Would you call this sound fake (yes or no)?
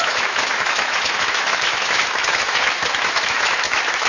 yes